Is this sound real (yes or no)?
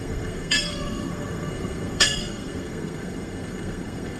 no